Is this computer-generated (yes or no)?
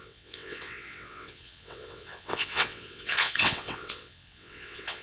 yes